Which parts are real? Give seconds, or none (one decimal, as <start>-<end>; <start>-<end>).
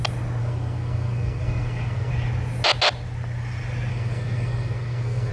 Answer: 0.0-0.4; 2.1-3.9